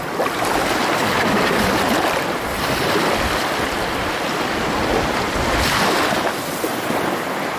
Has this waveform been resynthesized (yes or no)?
no